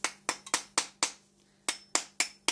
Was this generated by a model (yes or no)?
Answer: no